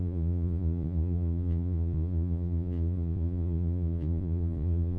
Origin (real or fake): fake